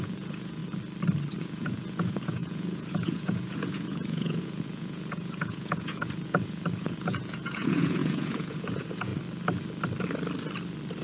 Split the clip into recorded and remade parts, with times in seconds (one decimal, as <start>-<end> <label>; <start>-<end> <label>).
0.0-0.6 remade; 0.6-1.4 recorded; 1.4-9.1 remade; 9.1-11.0 recorded